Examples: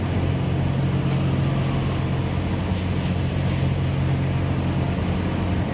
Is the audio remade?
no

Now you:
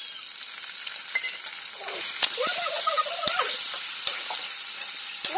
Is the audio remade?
no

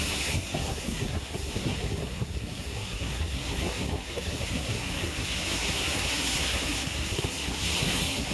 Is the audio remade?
yes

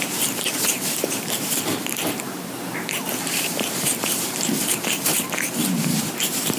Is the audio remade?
yes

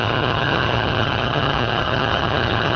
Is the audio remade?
yes